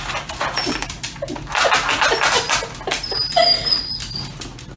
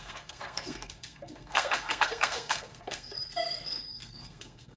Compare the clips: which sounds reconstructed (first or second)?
second